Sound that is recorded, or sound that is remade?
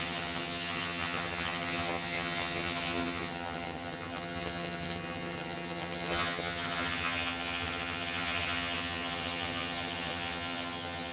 remade